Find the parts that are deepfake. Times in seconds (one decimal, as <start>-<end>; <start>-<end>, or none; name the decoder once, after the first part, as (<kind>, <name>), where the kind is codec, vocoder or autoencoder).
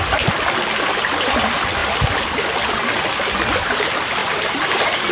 4.2-5.1 (vocoder, BigVGAN v2)